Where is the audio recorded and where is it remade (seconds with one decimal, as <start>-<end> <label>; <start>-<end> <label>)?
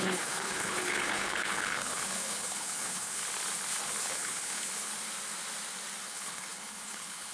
0.0-3.2 remade; 3.2-4.0 recorded; 4.0-4.9 remade; 4.9-6.0 recorded; 6.0-7.3 remade